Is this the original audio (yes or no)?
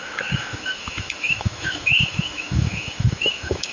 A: no